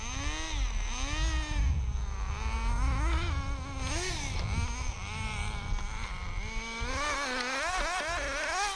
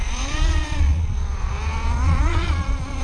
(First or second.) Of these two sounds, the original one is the first